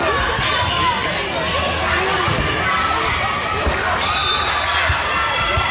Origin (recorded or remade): recorded